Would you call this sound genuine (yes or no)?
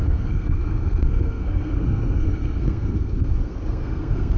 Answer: no